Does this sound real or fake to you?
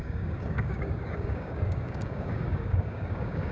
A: fake